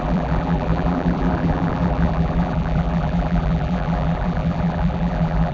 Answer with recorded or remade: remade